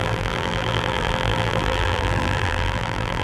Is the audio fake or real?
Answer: fake